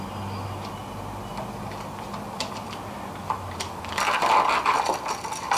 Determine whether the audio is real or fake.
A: real